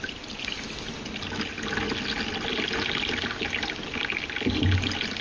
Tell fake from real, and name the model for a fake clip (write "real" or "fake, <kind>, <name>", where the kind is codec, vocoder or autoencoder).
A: real